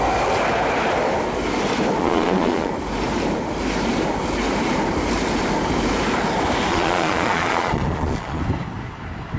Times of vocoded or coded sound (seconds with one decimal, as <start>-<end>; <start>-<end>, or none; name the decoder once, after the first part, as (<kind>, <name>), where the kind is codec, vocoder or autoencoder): 2.0-2.7 (vocoder, Vocos); 6.7-8.4